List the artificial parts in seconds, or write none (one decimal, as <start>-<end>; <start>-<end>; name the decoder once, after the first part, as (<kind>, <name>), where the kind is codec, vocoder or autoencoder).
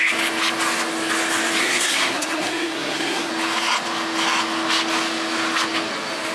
1.6-3.3 (codec, SNAC)